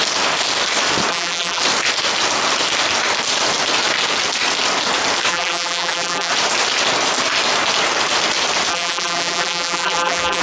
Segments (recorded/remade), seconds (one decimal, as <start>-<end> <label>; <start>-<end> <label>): 0.0-1.1 recorded; 1.1-1.6 remade; 1.6-5.3 recorded; 5.3-6.3 remade; 6.3-8.7 recorded; 8.7-10.4 remade